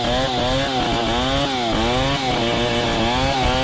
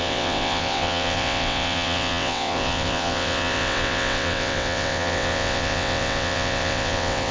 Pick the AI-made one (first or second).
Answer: second